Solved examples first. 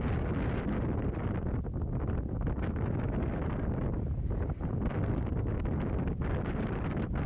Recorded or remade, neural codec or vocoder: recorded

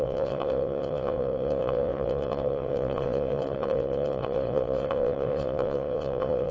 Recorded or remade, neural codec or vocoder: remade, vocoder, WaveNeXt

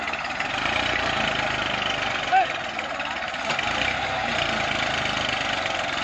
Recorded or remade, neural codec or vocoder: recorded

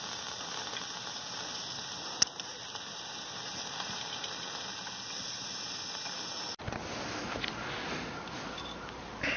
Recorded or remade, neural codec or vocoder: recorded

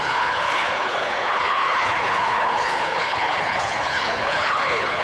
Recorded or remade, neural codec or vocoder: remade, codec, HILCodec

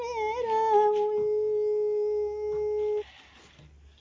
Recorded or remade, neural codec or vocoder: recorded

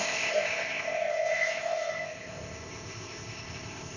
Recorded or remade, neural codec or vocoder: remade, codec, ZipCodec